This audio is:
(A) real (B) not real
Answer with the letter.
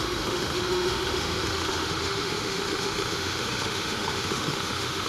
B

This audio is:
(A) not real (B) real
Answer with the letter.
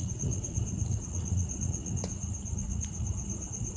A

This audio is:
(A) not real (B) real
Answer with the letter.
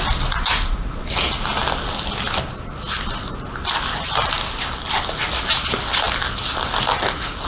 B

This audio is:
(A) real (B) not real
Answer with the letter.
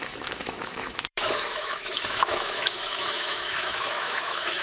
B